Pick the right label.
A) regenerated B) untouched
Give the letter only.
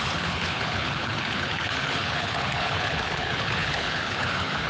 A